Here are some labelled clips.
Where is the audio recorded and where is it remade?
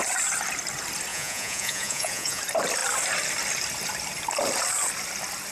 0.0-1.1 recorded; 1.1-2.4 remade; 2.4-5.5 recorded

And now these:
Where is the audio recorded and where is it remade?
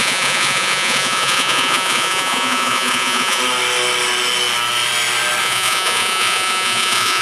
0.0-3.4 remade; 3.4-5.4 recorded; 5.4-7.2 remade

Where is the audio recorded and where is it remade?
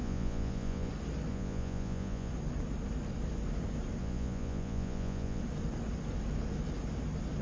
0.0-0.9 remade; 0.9-1.3 recorded; 1.3-2.3 remade; 2.3-4.0 recorded; 4.0-5.4 remade; 5.4-7.4 recorded